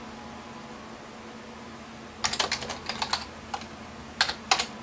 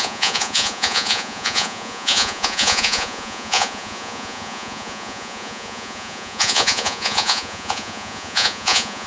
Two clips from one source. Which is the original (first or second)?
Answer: first